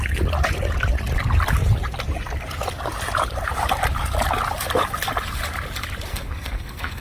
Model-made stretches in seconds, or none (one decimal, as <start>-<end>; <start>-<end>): 6.1-7.0